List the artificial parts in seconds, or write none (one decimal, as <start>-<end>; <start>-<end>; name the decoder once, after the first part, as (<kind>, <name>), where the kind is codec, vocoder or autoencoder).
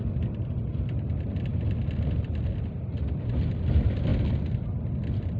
none